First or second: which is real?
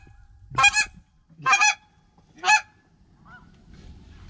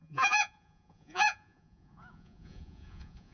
first